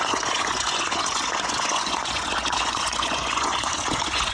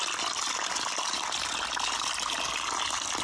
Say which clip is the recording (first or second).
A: second